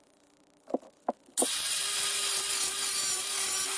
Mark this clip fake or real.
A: real